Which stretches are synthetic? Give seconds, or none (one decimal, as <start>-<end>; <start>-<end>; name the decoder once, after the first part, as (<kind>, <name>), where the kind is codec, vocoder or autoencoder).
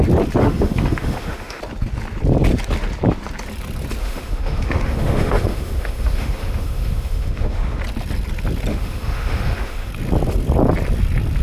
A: 0.4-1.6 (autoencoder, DAC-VAE); 4.0-7.8; 8.7-9.9